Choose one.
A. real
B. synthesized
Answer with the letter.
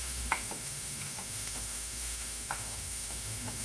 B